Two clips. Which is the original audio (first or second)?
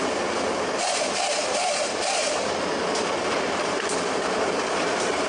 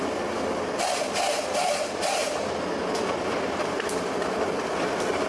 second